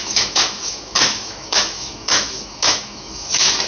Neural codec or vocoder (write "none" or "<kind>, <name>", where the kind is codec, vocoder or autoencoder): autoencoder, DAC-VAE